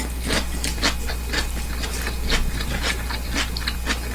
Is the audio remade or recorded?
recorded